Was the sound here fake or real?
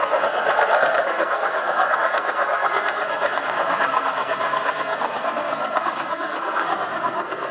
fake